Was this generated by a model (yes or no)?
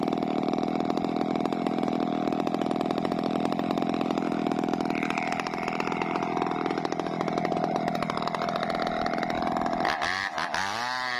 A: no